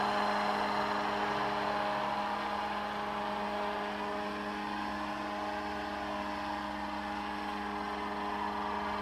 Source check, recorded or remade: recorded